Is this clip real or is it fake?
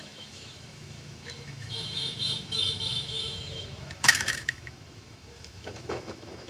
fake